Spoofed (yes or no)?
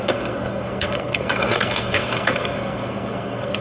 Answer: yes